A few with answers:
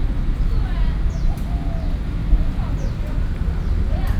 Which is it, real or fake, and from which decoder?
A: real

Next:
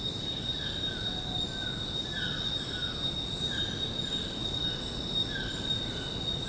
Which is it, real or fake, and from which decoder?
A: real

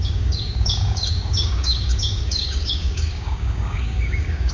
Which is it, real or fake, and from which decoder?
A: fake, codec, DAC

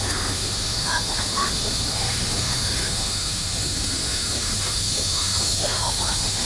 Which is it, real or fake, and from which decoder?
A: fake, autoencoder, DAC-VAE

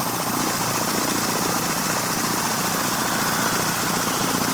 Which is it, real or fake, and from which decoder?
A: real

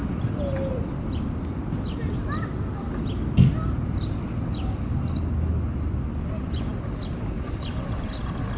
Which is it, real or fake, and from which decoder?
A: real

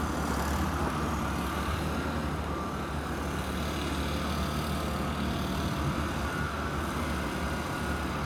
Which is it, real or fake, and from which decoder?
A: real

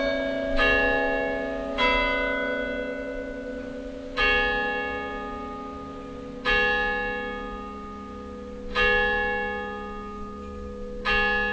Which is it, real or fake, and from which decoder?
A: real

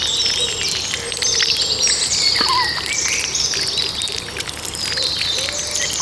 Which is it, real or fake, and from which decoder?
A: real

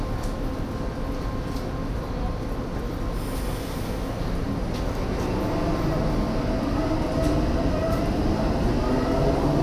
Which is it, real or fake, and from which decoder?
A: real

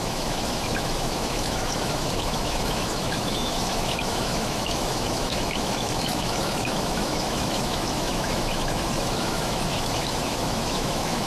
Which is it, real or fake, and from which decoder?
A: fake, autoencoder, DAC-VAE